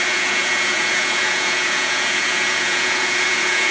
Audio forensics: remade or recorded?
remade